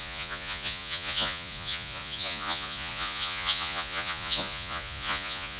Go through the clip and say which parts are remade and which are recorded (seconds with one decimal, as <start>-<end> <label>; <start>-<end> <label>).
0.0-5.6 remade